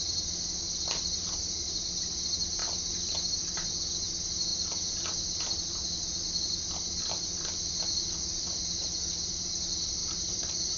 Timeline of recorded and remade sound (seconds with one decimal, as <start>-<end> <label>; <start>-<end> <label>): 0.0-10.0 recorded; 10.0-10.8 remade